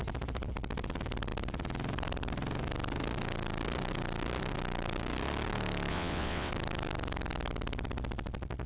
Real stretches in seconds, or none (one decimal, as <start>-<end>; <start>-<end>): 0.0-5.9; 6.5-8.7